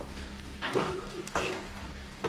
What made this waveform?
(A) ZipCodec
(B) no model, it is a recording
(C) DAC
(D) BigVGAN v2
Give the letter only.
C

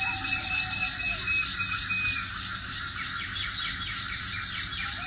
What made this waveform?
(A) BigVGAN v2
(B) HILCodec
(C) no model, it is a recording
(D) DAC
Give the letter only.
C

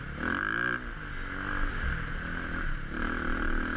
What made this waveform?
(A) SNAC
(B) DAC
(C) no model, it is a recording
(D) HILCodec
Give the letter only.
C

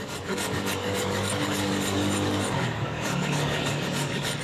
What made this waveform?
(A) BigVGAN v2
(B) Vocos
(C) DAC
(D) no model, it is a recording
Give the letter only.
C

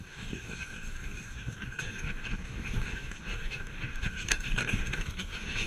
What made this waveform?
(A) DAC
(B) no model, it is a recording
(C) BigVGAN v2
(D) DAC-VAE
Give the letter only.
A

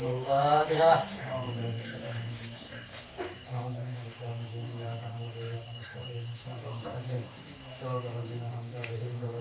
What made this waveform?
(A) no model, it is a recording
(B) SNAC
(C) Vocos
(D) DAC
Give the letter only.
D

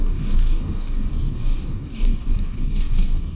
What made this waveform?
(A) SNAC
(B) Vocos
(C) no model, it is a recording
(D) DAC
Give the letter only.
D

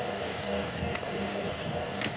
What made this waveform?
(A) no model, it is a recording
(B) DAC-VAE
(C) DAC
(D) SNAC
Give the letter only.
C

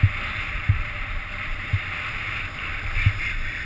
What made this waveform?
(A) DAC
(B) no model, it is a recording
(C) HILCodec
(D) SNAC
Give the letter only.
B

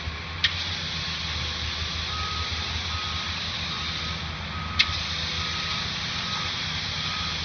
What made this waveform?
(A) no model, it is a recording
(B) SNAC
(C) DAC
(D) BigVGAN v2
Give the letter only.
A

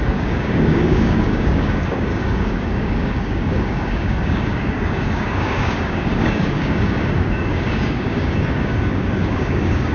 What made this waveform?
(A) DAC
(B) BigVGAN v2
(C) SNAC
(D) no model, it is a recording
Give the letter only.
A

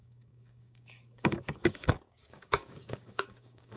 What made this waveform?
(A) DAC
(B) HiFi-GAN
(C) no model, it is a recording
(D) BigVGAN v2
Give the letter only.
A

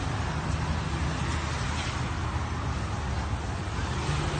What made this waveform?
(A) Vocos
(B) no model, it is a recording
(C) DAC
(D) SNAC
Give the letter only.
B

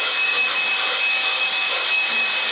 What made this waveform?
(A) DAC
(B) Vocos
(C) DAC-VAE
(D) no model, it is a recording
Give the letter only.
A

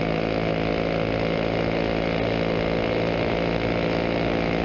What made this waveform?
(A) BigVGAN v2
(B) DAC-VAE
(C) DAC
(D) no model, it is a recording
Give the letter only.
D